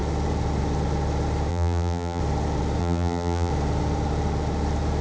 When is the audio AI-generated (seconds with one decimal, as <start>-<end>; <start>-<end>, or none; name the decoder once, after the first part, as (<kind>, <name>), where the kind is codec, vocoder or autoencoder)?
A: 1.5-2.2 (vocoder, BigVGAN v2); 2.8-3.5